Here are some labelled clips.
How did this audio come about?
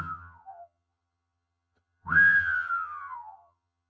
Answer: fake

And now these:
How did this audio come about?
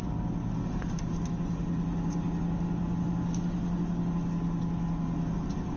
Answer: real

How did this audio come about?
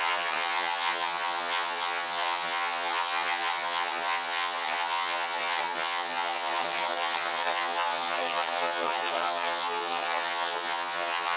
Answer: fake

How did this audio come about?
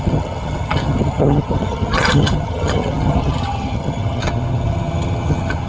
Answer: fake